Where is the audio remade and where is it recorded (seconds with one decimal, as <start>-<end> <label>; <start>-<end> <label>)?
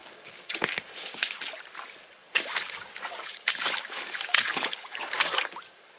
0.0-1.4 remade; 1.4-2.2 recorded; 2.2-6.0 remade